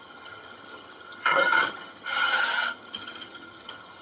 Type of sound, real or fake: fake